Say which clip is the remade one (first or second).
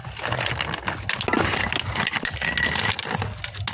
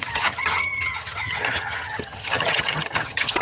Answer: second